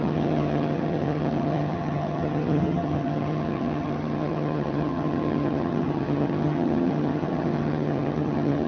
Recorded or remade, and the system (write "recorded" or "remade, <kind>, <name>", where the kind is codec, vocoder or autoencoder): remade, vocoder, HiFi-GAN